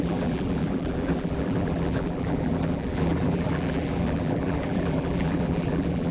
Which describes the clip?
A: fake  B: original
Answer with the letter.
A